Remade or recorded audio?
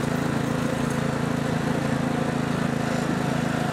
recorded